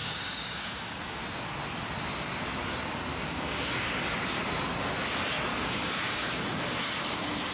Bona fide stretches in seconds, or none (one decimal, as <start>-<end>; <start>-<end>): 1.2-3.1; 3.9-5.5; 6.6-7.5

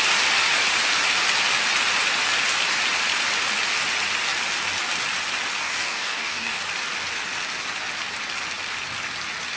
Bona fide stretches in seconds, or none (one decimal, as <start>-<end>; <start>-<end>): 0.0-5.6; 6.6-9.6